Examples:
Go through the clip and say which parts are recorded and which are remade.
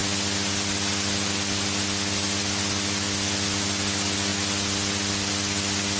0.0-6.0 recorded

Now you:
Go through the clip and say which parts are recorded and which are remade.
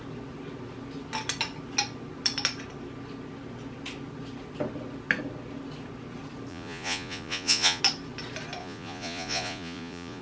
0.0-6.5 recorded; 6.5-7.8 remade; 7.8-8.6 recorded; 8.6-10.2 remade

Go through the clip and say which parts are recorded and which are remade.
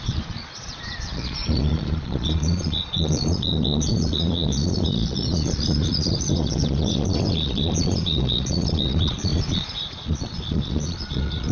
0.0-11.5 remade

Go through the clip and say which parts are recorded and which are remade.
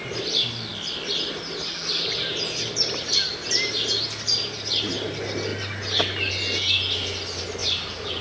0.0-8.2 recorded